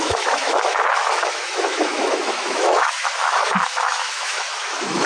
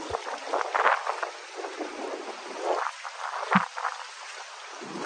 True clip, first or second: second